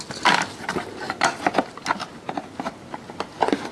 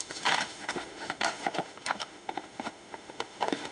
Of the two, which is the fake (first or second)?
second